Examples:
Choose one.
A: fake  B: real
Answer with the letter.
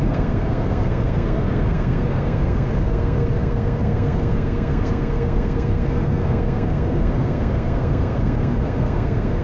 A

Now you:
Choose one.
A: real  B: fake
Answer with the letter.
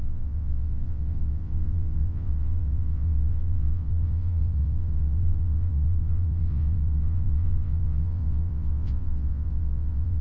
B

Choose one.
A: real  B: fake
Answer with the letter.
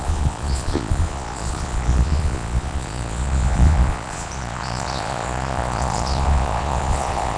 B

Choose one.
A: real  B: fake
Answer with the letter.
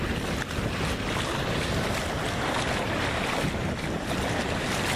A